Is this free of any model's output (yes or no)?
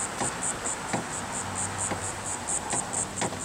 yes